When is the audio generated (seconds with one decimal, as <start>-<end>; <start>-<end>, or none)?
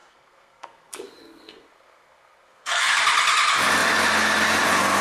0.0-3.0